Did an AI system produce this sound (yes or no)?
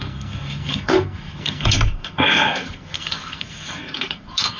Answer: yes